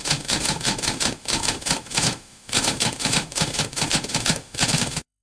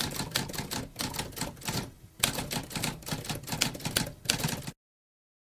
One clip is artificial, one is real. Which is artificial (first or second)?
first